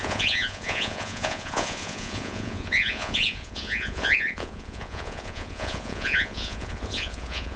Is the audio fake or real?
fake